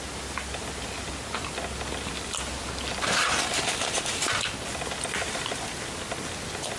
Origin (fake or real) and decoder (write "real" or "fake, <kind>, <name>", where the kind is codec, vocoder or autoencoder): real